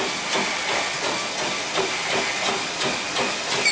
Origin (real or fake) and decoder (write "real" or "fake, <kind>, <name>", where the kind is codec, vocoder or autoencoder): real